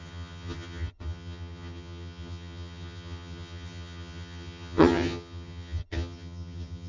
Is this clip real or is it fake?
fake